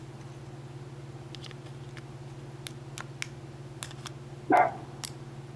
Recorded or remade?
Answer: recorded